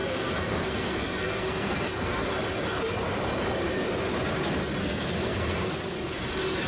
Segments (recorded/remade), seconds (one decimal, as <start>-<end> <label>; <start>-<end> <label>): 0.0-2.3 remade; 2.3-4.8 recorded; 4.8-5.7 remade; 5.7-6.7 recorded